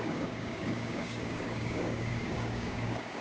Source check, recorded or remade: remade